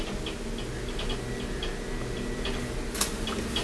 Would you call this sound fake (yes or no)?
no